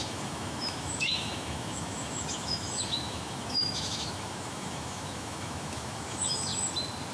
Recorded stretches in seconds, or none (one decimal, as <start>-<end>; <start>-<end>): 6.5-7.1

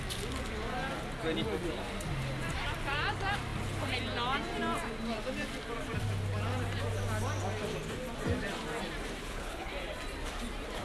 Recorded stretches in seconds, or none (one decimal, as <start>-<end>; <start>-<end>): 0.0-9.2; 9.7-10.8

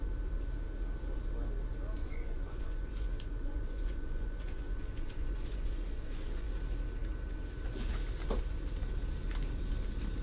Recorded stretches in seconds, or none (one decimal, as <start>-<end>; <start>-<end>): 0.0-2.0; 6.5-10.2

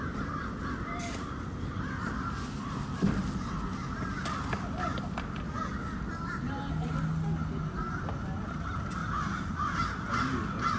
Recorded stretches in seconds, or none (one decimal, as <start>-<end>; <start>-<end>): 0.0-10.8

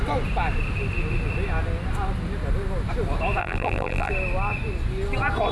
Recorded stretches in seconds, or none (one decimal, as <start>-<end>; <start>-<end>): 0.0-3.4; 4.1-5.5

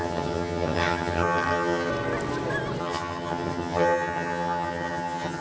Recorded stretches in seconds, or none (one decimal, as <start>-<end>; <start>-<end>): 1.9-2.8

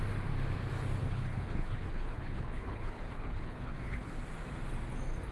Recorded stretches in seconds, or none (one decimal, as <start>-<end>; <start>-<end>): 0.0-1.0; 4.2-5.3

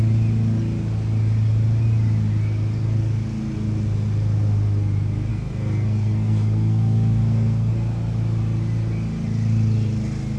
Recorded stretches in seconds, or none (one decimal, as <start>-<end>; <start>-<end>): 0.0-5.3; 7.7-10.4